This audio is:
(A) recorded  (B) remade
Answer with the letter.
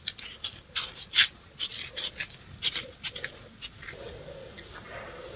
A